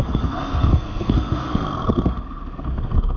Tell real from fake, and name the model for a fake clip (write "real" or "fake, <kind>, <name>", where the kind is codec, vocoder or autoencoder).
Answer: fake, codec, SNAC